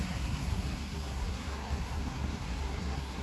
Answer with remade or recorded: remade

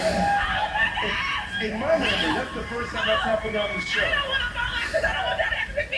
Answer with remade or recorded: recorded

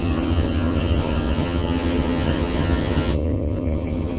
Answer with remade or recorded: remade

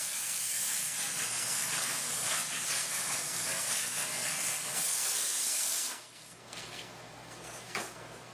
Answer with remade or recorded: remade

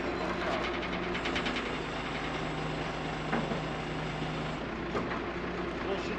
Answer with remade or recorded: recorded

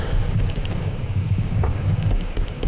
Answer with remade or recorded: remade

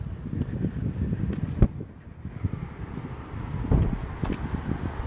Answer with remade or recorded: recorded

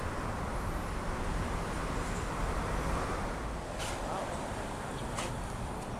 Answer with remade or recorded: recorded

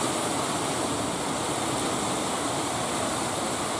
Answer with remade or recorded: recorded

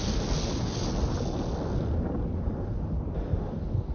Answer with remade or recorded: recorded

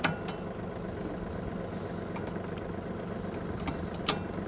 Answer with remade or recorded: recorded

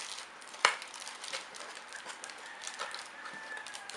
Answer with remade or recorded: remade